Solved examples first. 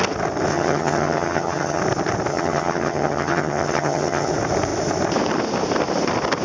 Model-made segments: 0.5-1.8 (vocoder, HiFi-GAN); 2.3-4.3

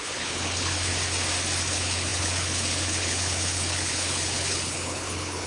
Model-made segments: 0.0-0.9 (codec, HILCodec); 1.7-5.5

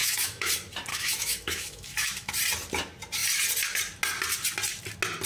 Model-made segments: 0.0-0.5 (autoencoder, DAC-VAE); 0.9-2.3

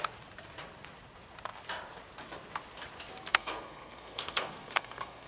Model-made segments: 3.3-5.3 (codec, SNAC)